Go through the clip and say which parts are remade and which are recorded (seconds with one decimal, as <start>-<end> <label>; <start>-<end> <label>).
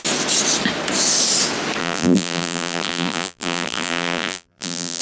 0.0-1.8 recorded; 1.8-5.0 remade